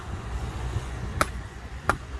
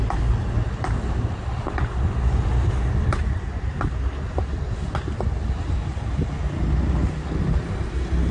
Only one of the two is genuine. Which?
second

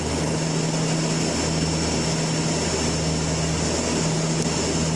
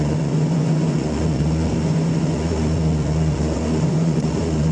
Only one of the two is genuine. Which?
first